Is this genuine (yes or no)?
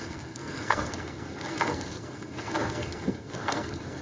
no